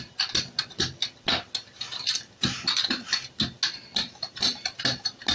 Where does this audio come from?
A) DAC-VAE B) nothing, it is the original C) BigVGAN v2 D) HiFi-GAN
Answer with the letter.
B